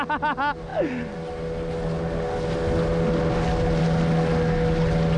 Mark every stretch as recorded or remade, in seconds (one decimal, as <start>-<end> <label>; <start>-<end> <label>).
0.0-5.2 recorded